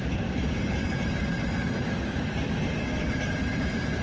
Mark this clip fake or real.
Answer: real